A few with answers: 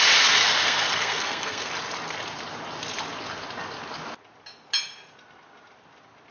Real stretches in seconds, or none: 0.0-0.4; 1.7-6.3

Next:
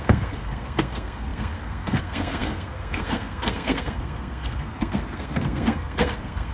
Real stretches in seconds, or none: none